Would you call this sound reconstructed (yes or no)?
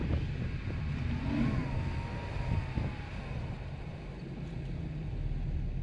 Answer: no